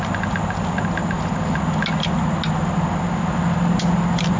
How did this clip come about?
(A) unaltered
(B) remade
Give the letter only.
A